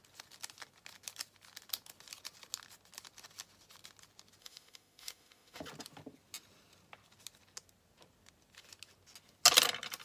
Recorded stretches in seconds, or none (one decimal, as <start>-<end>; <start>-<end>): 0.0-4.4; 5.6-10.0